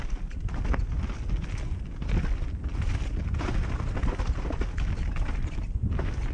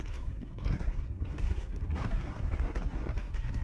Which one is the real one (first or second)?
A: first